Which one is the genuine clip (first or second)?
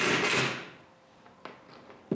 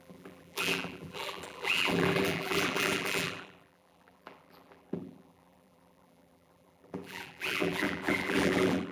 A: first